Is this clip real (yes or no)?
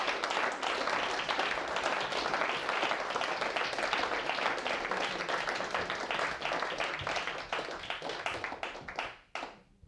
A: yes